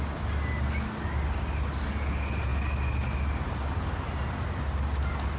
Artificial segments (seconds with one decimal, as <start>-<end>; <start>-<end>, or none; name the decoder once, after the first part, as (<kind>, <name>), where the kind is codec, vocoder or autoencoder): none